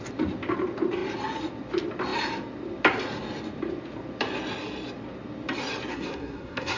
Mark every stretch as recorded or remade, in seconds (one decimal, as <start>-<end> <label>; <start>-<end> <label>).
0.0-5.9 recorded; 5.9-6.8 remade